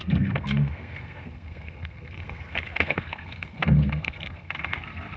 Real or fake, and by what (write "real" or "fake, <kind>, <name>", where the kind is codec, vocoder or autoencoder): fake, codec, SNAC